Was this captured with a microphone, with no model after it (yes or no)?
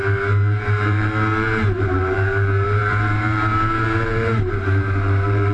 no